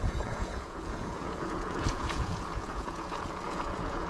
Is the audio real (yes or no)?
no